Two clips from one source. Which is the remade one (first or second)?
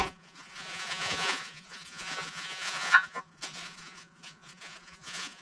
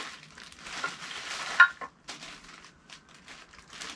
first